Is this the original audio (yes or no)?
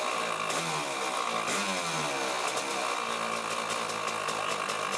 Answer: yes